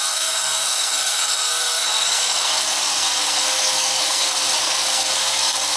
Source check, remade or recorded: remade